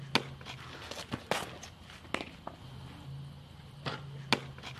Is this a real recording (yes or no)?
yes